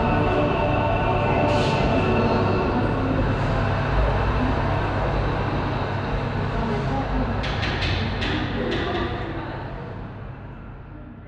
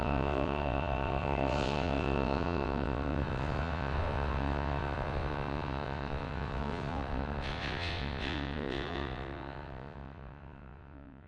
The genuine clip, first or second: first